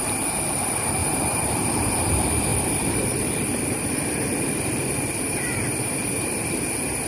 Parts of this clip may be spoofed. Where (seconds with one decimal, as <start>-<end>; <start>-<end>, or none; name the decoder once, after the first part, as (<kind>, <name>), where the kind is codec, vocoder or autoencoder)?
0.0-7.1 (vocoder, BigVGAN v2)